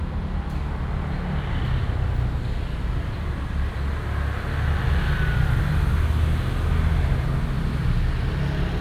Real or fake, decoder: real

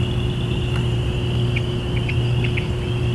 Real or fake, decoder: real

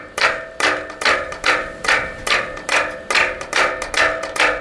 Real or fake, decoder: real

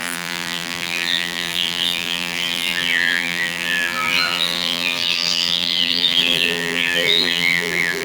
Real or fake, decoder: fake, vocoder, BigVGAN v2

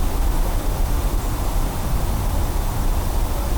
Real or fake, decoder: real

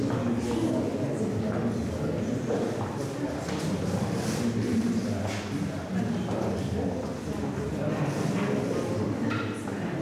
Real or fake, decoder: real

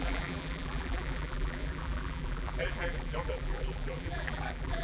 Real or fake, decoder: fake, vocoder, BigVGAN v2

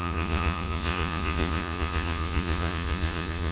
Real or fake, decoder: fake, vocoder, Vocos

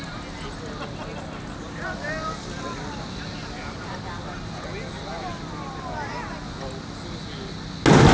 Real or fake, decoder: real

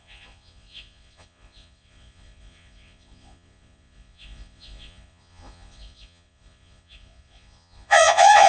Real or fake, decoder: fake, vocoder, Vocos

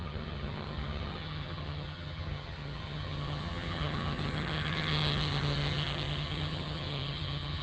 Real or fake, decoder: fake, vocoder, HiFi-GAN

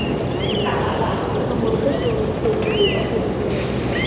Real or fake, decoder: fake, vocoder, BigVGAN v2